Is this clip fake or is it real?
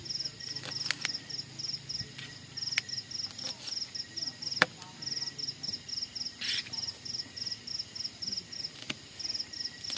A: real